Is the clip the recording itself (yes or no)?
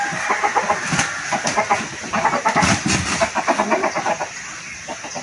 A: yes